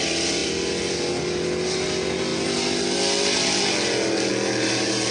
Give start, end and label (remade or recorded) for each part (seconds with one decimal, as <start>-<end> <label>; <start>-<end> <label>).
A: 0.0-5.1 recorded